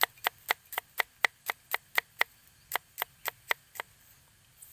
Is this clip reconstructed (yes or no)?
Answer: no